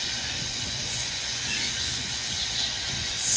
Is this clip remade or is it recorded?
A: remade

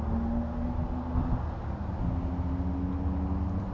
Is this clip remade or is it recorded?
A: recorded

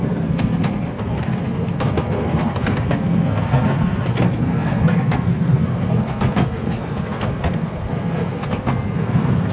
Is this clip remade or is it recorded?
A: remade